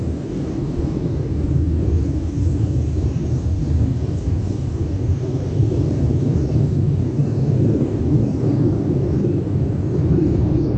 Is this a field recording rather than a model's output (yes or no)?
no